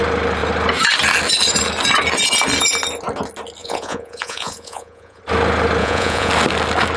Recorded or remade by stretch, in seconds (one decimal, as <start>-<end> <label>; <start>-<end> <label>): 0.0-3.6 recorded; 3.6-5.2 remade; 5.2-5.8 recorded; 5.8-6.3 remade; 6.3-7.0 recorded